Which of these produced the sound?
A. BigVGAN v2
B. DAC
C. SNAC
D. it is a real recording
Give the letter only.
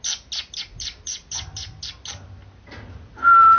D